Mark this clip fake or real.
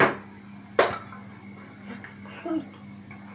real